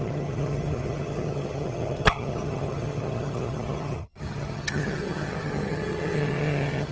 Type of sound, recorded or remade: remade